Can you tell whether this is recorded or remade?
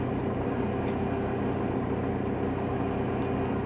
recorded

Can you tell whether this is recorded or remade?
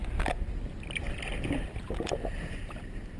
recorded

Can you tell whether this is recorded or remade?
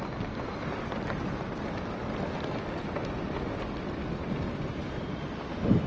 recorded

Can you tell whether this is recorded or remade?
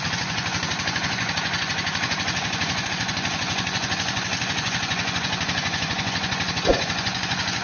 remade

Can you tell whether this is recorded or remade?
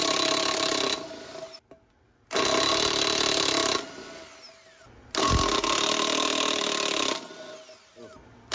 recorded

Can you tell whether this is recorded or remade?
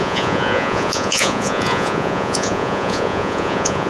remade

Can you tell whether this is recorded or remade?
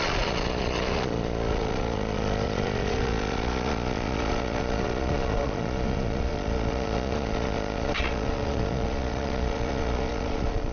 remade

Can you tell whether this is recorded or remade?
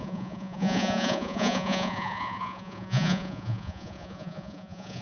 remade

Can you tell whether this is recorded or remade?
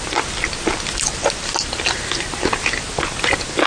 recorded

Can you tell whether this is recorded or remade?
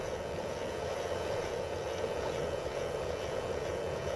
remade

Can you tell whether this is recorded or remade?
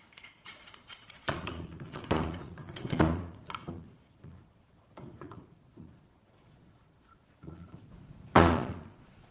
remade